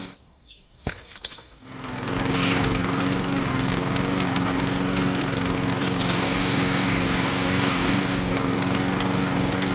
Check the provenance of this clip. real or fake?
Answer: fake